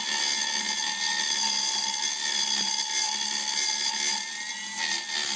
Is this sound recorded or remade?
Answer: recorded